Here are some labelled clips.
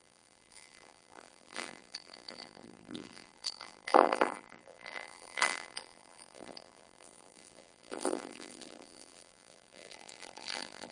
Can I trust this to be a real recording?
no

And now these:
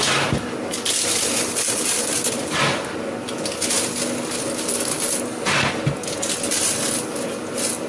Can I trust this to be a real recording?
yes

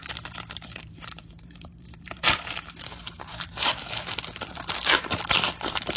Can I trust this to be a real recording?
no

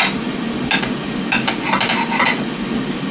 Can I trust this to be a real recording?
yes